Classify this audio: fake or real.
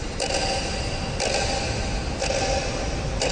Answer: real